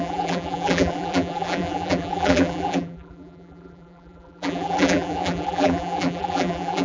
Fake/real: fake